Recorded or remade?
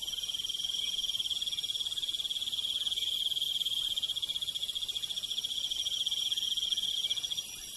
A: recorded